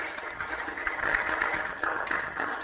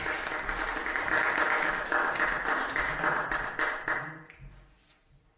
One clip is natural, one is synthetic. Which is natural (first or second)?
second